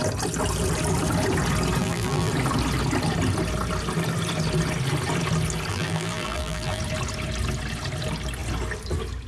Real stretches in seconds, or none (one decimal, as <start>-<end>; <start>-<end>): 0.0-1.8; 2.3-5.7; 6.8-9.3